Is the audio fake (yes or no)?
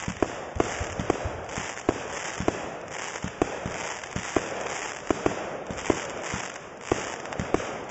no